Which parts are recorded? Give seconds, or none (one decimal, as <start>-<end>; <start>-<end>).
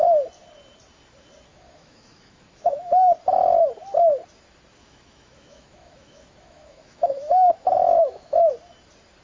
0.0-1.5; 3.1-4.8; 8.5-9.2